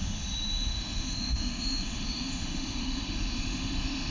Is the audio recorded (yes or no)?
no